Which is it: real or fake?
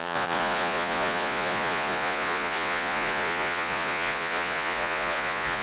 fake